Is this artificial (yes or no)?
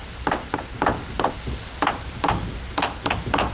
no